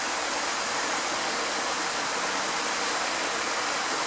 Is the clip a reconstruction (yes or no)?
no